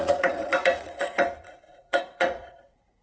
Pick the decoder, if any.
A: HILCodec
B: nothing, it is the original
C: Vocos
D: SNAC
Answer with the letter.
C